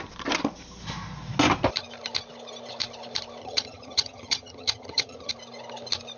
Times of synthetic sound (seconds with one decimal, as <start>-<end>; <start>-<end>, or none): 3.4-5.3